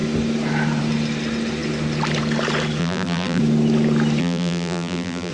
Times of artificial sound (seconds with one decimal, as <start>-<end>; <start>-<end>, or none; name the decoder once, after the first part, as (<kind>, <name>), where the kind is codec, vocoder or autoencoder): 2.8-3.4 (vocoder, BigVGAN v2); 4.2-5.3